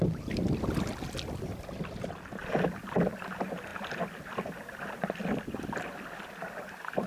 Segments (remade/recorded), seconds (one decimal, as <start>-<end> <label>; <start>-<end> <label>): 0.0-7.1 recorded